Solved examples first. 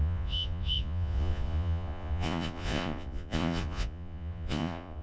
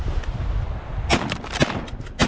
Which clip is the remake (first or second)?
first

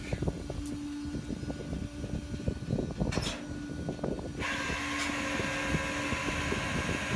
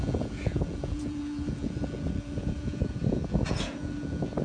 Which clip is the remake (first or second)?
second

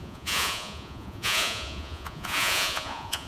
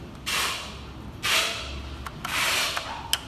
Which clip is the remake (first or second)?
first